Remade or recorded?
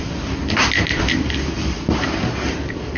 recorded